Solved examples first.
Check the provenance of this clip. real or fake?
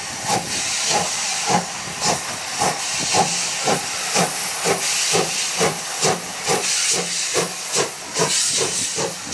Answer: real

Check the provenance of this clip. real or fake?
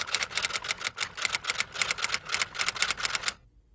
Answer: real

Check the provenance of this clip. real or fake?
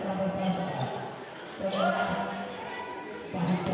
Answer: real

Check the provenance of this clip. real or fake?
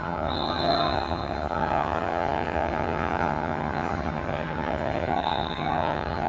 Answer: fake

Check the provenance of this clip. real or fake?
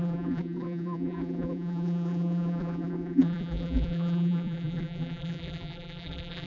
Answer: fake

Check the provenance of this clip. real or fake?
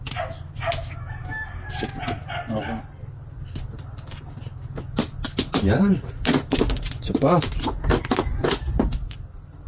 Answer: real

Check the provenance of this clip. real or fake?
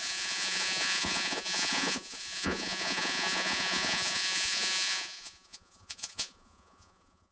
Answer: fake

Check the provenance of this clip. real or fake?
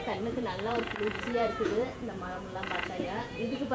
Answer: fake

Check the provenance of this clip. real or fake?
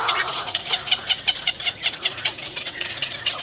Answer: fake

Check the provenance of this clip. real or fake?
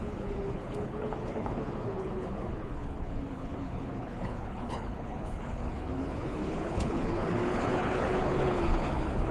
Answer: fake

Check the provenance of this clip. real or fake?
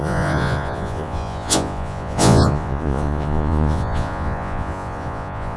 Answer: fake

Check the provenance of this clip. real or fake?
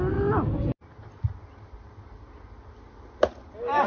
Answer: real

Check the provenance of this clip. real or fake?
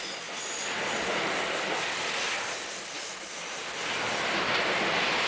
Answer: real